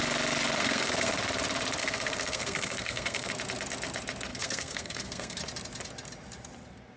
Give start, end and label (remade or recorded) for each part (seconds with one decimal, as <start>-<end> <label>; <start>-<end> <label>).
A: 0.0-0.6 recorded; 0.6-1.1 remade; 1.1-1.8 recorded; 1.8-3.3 remade; 3.3-4.3 recorded; 4.3-5.4 remade; 5.4-7.0 recorded